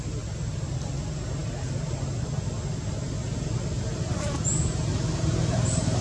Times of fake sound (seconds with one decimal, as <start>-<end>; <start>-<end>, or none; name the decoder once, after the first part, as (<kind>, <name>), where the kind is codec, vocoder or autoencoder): none